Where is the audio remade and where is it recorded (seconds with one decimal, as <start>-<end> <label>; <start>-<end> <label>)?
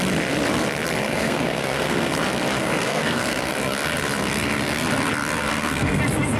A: 0.0-1.0 recorded; 1.0-2.1 remade; 2.1-2.6 recorded; 2.6-3.5 remade; 3.5-5.5 recorded; 5.5-6.0 remade; 6.0-6.4 recorded